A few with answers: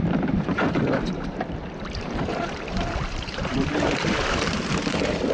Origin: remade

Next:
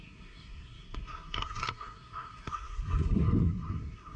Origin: remade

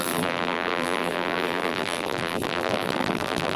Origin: remade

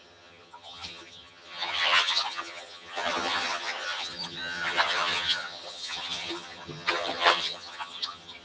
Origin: remade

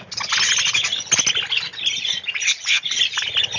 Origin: recorded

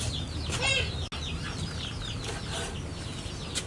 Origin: recorded